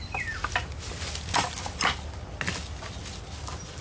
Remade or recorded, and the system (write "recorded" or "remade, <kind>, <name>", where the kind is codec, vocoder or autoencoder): recorded